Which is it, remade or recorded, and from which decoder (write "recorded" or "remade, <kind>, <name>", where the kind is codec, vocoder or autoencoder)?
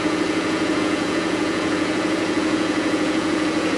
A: remade, vocoder, Vocos